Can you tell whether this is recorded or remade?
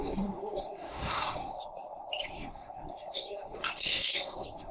remade